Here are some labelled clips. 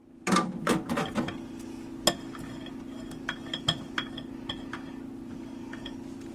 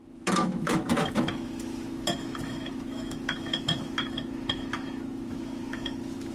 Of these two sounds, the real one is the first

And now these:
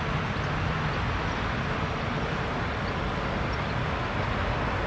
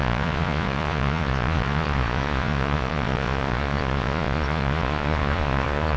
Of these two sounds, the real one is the first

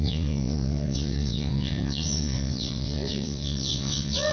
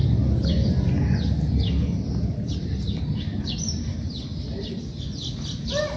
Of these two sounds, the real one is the second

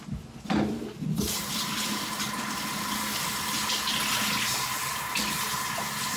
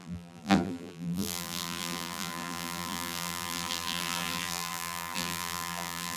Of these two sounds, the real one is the first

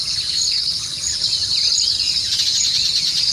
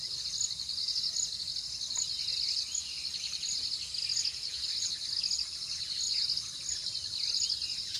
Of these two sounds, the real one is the second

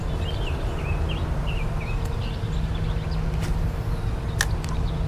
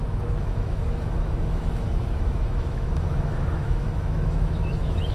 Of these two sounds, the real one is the first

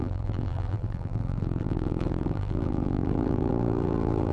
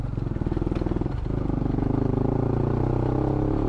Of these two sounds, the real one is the second